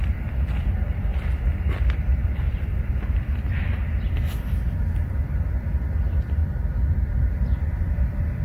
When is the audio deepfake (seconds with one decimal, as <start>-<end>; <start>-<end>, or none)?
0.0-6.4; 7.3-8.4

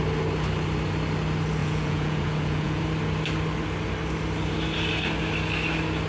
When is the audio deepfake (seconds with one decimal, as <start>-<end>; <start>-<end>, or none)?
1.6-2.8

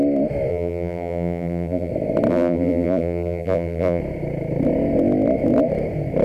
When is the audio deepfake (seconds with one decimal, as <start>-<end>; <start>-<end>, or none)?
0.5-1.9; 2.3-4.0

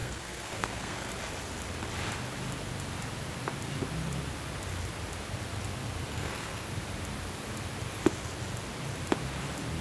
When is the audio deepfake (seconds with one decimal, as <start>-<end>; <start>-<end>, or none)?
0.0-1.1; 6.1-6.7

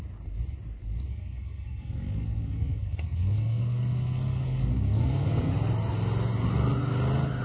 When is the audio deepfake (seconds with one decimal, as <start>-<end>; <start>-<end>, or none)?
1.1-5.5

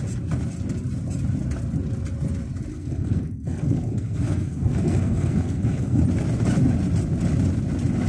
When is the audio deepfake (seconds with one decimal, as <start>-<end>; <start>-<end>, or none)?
2.7-6.0